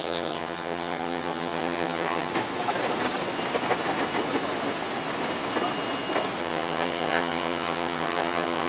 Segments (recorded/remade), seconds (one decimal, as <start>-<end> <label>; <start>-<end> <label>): 0.0-2.3 remade; 2.3-6.4 recorded; 6.4-8.7 remade